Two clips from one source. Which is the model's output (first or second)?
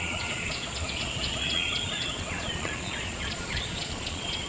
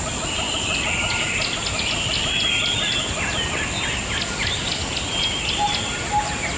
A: first